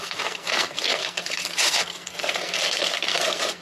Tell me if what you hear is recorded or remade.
remade